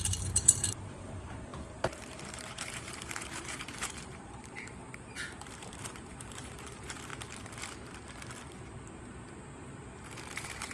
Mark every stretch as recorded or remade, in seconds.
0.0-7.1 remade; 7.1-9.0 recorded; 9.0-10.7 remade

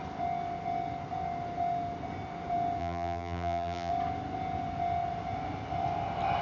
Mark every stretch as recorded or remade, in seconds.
0.0-2.8 recorded; 2.8-3.9 remade; 3.9-6.4 recorded